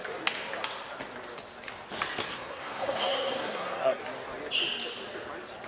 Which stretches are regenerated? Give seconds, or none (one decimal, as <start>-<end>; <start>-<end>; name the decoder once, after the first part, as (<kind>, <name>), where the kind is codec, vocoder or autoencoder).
2.2-4.0 (codec, SNAC)